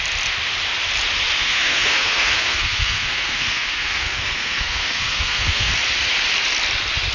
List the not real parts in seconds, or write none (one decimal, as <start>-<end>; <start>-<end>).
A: 1.4-5.7